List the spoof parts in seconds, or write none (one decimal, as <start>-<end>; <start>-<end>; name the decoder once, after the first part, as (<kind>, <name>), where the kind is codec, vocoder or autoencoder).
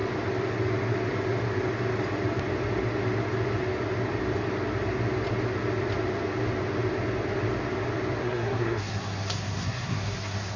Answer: 8.2-10.6 (codec, SNAC)